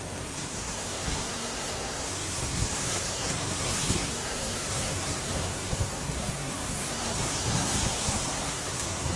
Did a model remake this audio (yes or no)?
yes